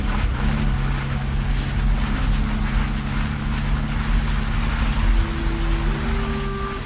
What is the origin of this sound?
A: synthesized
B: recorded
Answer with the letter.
B